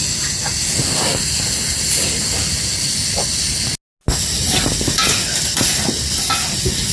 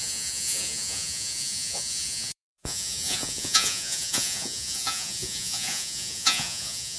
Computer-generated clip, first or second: second